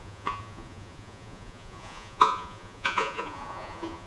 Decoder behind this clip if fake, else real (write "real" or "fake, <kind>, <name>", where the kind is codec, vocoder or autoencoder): fake, vocoder, Vocos